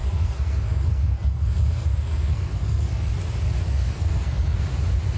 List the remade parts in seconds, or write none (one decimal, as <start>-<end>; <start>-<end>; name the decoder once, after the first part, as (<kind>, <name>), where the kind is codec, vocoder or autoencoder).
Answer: 0.0-3.1 (codec, SNAC); 3.7-4.6